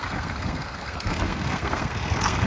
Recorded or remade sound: remade